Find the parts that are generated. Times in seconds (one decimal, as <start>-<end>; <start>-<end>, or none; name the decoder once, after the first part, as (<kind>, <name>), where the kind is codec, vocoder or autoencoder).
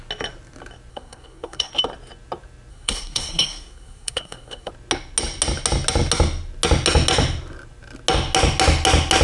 0.9-1.7 (codec, SNAC); 2.7-4.7